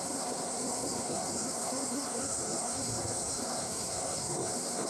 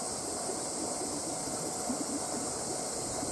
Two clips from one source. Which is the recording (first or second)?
second